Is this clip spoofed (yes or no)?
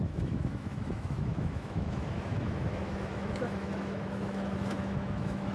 yes